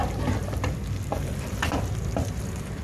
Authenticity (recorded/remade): remade